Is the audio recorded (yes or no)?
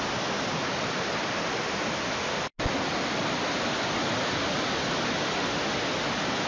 yes